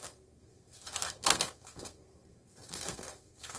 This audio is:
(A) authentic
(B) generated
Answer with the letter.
B